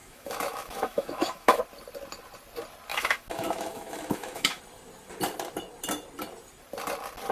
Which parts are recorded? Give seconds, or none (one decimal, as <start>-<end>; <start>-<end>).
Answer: 1.6-2.9; 4.6-7.3